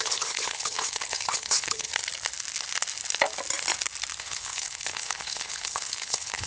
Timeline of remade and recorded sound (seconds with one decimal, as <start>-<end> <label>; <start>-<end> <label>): 0.0-1.9 remade; 1.9-4.2 recorded; 4.2-6.5 remade